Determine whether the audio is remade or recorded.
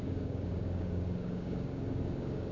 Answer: remade